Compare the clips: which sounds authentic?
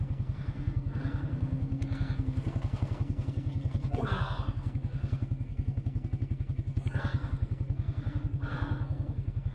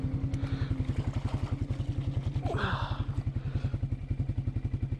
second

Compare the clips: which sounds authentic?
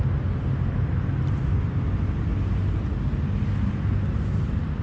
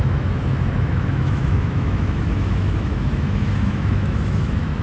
first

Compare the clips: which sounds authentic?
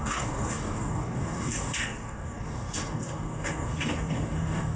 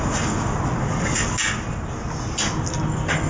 second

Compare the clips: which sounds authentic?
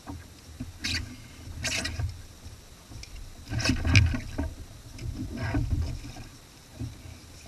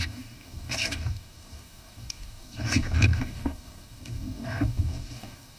first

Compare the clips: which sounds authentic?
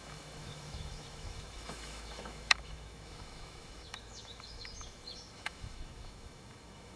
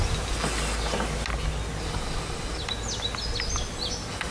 second